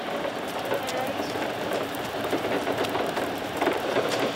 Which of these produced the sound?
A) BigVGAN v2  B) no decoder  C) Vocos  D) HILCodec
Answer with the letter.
A